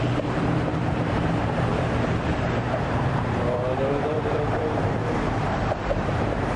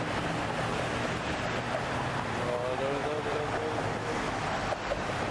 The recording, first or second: second